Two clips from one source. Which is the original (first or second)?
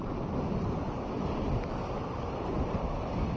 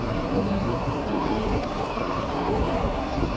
first